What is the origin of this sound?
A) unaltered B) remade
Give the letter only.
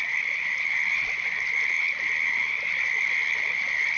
A